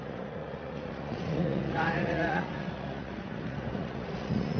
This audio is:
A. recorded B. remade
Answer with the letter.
B